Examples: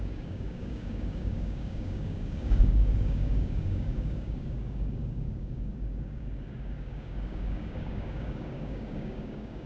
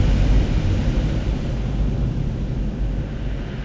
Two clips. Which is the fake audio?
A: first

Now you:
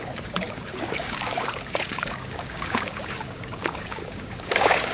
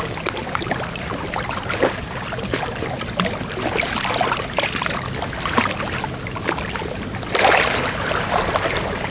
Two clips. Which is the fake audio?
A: first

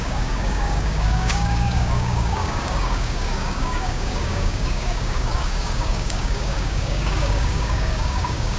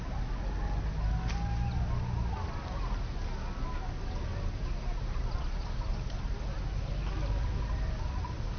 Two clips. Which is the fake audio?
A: first